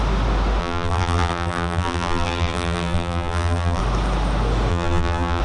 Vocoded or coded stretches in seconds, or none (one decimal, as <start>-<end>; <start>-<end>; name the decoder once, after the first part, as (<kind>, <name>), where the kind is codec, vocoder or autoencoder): 0.6-3.8 (vocoder, BigVGAN v2); 4.7-5.4